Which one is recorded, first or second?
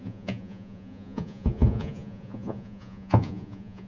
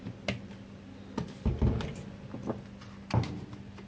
second